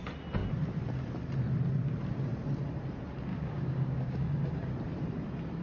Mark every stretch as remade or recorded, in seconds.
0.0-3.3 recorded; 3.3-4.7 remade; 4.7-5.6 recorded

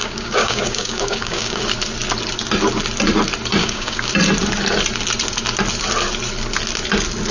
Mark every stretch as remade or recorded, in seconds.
0.0-1.6 remade; 1.6-3.6 recorded; 3.6-4.1 remade; 4.1-7.3 recorded

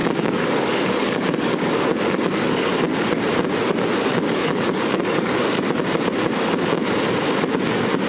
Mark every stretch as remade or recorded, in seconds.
0.0-2.7 remade; 2.7-4.1 recorded; 4.1-5.6 remade; 5.6-8.1 recorded

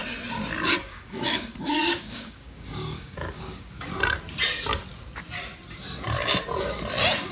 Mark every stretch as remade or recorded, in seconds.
0.0-0.8 recorded; 0.8-3.9 remade; 3.9-7.3 recorded

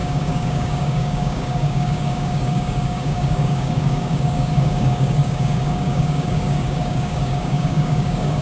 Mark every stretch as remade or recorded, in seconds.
0.0-8.4 remade

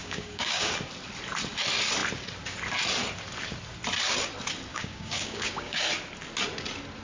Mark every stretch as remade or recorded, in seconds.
0.0-0.7 remade; 0.7-4.7 recorded; 4.7-5.8 remade; 5.8-7.0 recorded